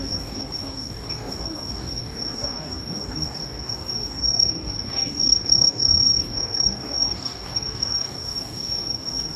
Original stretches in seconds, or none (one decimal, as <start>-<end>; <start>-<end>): none